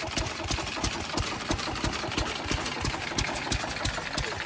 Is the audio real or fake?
real